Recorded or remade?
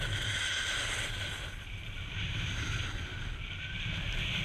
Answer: recorded